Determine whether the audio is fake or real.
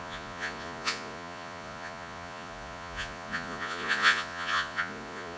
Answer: fake